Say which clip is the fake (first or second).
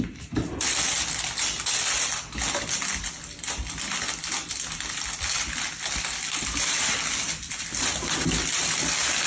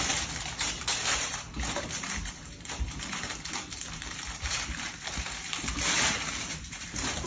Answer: second